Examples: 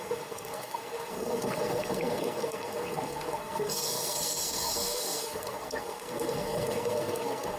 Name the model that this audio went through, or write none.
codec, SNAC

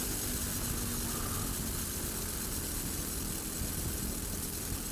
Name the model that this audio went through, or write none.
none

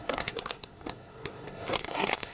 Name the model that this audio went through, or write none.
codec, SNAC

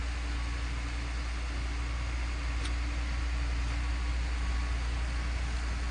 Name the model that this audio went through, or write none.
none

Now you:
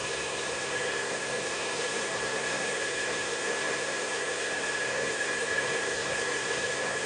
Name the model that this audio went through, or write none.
codec, SNAC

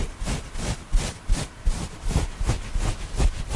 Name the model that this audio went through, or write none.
none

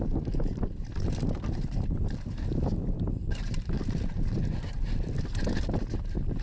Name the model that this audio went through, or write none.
none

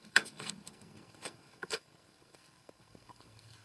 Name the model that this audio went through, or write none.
codec, SNAC